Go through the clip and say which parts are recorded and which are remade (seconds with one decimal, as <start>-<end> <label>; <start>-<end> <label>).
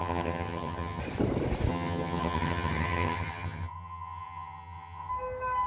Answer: 0.0-1.0 remade; 1.0-1.7 recorded; 1.7-5.1 remade; 5.1-5.7 recorded